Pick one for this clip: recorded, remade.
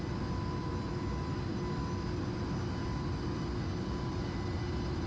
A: recorded